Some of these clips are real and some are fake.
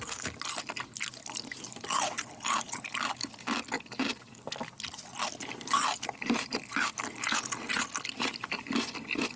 real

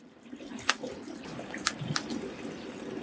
real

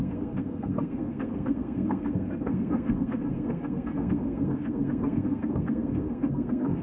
fake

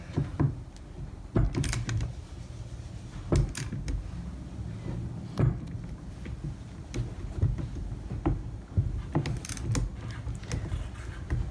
real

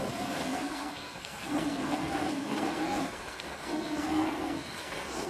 fake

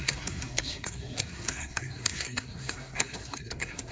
fake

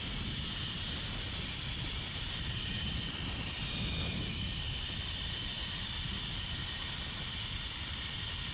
real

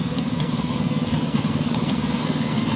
fake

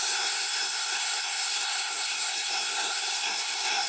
fake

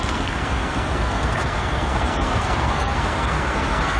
fake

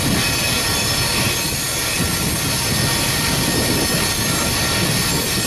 real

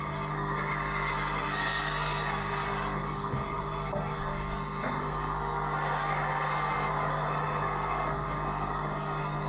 fake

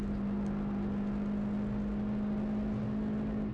real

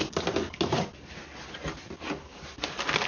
real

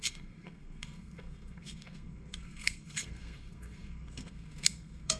fake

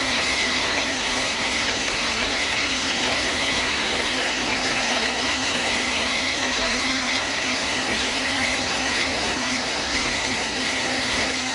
fake